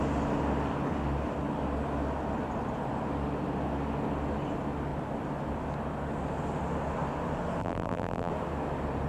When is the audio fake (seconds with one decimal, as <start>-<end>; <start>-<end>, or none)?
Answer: 7.6-8.3